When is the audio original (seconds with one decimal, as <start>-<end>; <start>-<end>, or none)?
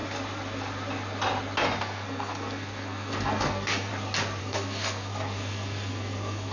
0.0-1.8; 3.9-4.4